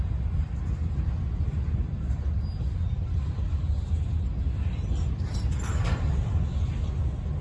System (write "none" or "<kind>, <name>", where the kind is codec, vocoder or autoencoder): none